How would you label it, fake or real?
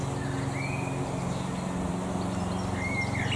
real